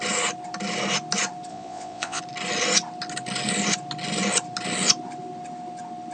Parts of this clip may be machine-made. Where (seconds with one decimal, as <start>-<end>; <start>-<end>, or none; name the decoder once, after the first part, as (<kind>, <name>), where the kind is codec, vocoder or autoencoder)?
1.5-2.2 (vocoder, Vocos)